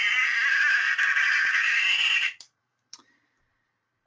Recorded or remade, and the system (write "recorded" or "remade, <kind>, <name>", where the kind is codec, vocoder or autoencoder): remade, vocoder, BigVGAN v2